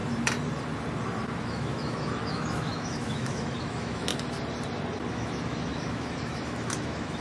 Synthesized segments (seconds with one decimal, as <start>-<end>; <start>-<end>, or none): 1.4-4.1; 5.1-7.2

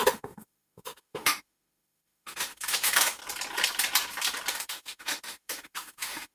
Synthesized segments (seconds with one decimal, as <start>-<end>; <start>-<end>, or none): 0.0-3.2; 4.5-6.3

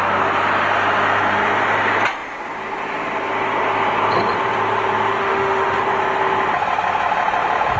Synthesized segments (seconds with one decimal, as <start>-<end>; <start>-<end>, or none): 5.2-5.8

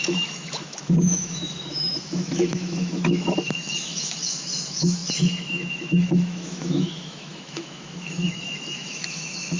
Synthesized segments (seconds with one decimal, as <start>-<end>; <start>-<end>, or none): 0.0-9.6

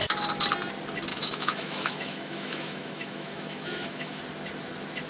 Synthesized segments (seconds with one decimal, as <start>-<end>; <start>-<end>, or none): 1.1-4.2